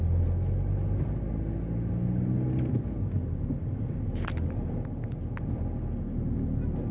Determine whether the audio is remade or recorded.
recorded